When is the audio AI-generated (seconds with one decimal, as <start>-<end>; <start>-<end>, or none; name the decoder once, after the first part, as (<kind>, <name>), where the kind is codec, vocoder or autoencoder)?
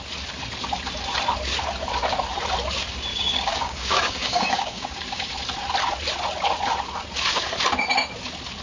3.1-5.3 (codec, DAC)